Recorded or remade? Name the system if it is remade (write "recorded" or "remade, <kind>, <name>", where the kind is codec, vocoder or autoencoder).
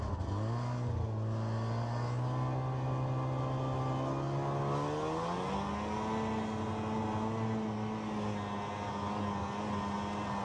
recorded